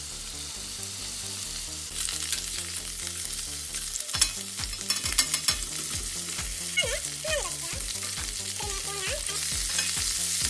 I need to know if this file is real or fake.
real